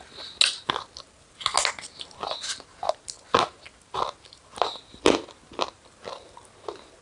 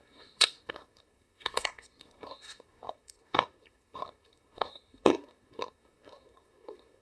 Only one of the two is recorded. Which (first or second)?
first